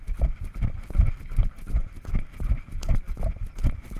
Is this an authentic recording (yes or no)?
yes